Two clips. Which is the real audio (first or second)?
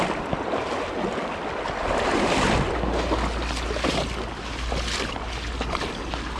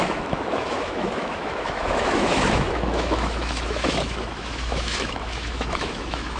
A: first